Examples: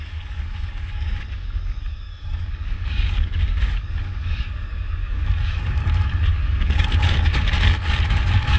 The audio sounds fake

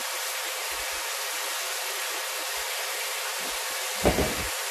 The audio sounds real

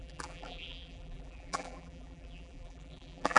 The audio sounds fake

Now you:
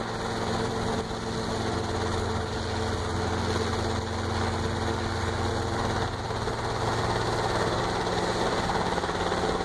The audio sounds real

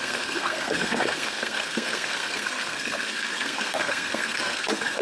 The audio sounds fake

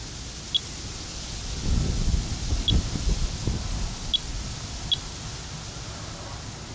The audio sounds real